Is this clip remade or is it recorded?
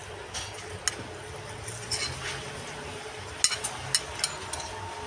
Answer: recorded